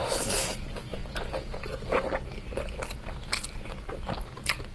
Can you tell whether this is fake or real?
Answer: real